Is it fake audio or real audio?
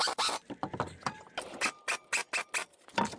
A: real